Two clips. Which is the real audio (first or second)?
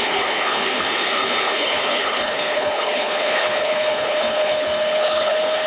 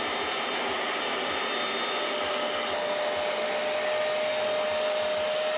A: second